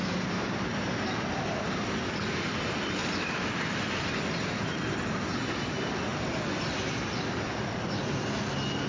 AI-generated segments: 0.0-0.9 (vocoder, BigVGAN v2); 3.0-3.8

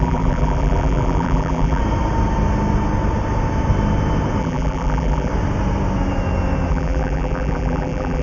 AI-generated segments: 0.0-1.8 (vocoder, BigVGAN v2); 4.4-5.3; 6.7-8.2

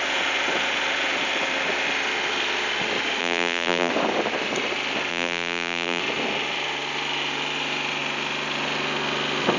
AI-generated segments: 3.2-3.9 (vocoder, BigVGAN v2); 5.1-6.0

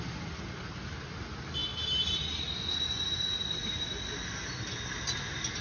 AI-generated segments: none